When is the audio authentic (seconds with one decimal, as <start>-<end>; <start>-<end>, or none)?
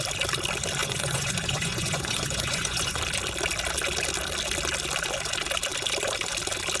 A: 0.0-0.8; 3.0-6.8